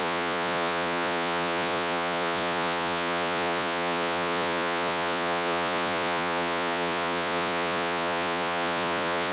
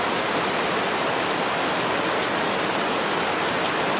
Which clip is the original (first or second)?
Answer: second